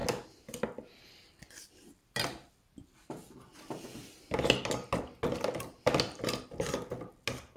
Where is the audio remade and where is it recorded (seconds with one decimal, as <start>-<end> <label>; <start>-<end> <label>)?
0.0-7.6 recorded